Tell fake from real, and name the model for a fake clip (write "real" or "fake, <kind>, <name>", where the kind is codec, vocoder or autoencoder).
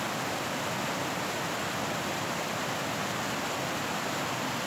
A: real